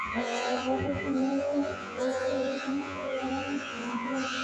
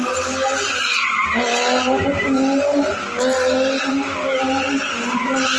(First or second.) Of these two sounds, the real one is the second